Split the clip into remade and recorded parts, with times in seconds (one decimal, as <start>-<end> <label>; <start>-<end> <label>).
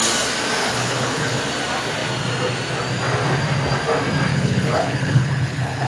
0.0-0.6 recorded; 0.6-1.4 remade; 1.4-4.3 recorded; 4.3-5.9 remade